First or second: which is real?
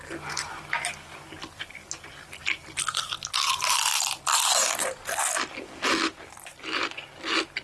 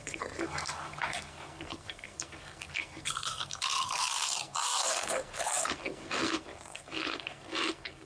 first